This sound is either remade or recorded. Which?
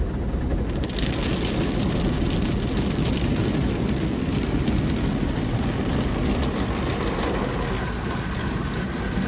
recorded